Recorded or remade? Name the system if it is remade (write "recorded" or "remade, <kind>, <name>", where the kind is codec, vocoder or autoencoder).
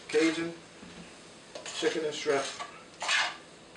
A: recorded